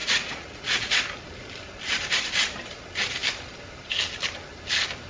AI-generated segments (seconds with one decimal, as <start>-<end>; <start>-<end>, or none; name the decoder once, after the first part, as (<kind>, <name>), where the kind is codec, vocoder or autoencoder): 0.0-1.0 (vocoder, Vocos)